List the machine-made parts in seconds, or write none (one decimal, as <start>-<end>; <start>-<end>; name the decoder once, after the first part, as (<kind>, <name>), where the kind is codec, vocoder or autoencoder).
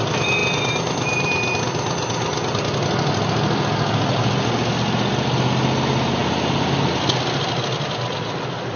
none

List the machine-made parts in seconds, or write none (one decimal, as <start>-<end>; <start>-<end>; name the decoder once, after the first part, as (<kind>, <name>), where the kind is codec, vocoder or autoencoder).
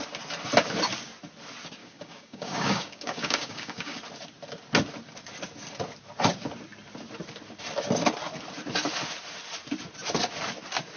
1.8-4.0 (codec, DAC)